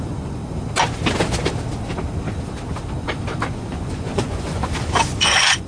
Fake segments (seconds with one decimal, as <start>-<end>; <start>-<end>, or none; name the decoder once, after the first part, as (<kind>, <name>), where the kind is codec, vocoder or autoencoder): 0.0-0.4 (vocoder, Vocos); 3.5-4.6; 5.2-5.7